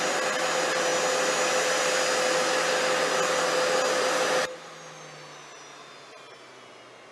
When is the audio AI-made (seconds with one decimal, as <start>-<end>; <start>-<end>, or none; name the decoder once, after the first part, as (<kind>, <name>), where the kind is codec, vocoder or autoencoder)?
none